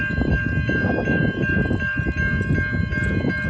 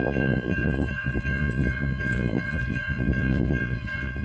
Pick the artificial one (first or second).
second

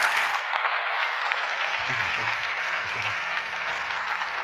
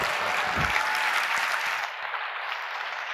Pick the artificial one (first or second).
first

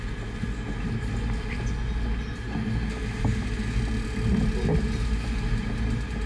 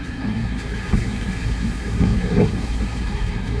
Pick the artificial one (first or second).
second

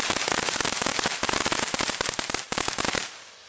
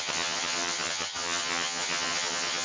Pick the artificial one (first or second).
second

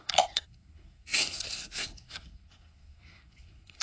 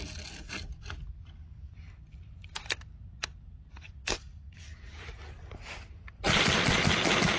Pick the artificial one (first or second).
first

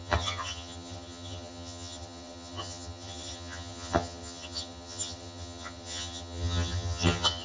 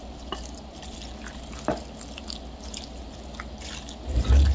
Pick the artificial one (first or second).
first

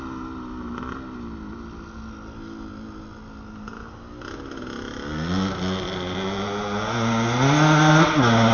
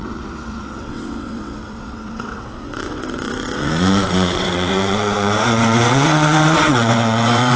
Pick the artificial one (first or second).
second